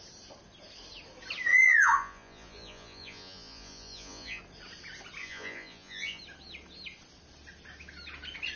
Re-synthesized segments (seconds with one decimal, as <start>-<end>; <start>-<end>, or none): 1.5-4.4; 5.2-6.2